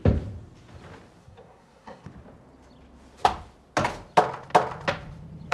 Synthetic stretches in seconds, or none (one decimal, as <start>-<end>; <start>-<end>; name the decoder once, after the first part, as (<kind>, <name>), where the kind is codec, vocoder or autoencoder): 1.2-2.1 (codec, SNAC)